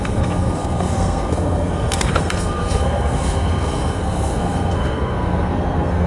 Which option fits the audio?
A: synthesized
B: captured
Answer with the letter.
A